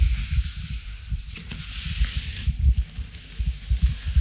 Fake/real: real